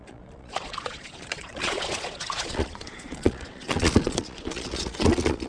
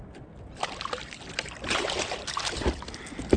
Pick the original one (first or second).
second